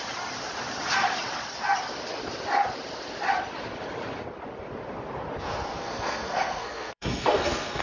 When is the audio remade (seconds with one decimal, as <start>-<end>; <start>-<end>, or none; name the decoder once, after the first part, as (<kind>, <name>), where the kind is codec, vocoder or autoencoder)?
5.8-7.8 (codec, SNAC)